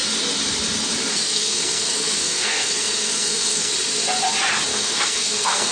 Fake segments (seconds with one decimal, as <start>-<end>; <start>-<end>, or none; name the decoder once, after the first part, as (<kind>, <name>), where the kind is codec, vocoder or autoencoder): 1.1-3.7 (codec, SNAC); 4.7-5.7